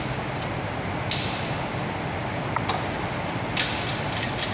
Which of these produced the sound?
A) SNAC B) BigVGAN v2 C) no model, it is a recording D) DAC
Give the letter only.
C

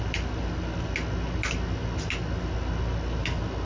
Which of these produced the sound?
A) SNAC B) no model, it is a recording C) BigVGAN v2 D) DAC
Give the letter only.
B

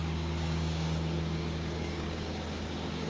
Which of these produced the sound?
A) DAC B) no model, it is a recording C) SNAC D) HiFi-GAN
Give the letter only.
A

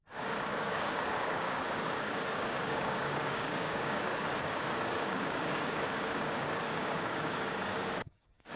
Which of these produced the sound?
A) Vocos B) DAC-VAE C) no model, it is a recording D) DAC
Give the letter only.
D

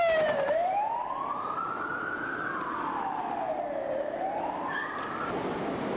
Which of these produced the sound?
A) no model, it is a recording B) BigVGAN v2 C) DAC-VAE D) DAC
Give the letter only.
A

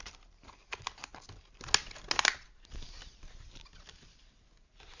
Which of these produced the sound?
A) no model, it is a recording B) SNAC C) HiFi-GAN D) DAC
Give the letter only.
A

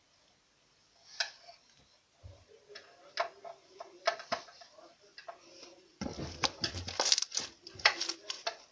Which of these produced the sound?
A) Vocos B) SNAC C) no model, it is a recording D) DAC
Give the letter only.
C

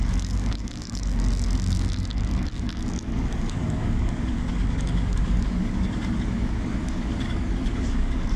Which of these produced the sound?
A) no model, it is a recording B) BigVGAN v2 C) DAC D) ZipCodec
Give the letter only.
C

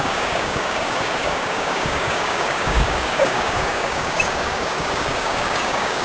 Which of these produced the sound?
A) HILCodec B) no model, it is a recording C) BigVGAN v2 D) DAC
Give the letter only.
D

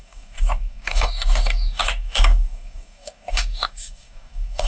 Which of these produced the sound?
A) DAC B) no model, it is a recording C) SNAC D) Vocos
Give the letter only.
A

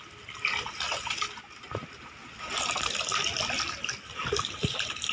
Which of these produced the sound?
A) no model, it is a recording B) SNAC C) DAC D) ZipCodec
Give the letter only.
A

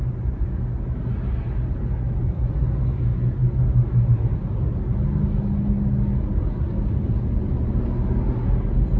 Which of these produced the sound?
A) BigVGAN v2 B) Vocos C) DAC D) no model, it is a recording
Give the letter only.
D